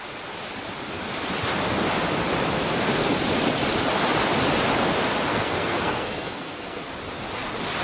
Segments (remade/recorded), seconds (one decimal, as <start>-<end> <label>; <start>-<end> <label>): 0.0-5.3 recorded; 5.3-6.9 remade; 6.9-7.8 recorded